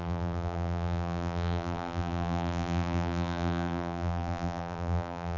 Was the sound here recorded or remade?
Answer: remade